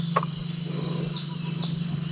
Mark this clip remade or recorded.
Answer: recorded